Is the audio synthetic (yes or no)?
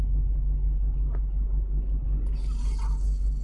no